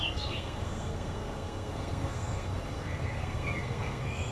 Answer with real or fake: fake